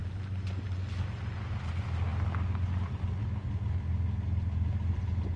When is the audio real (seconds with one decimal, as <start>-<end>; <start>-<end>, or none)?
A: 0.0-5.4